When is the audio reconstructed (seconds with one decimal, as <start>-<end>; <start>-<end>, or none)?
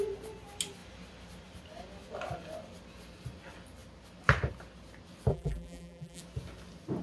5.3-6.2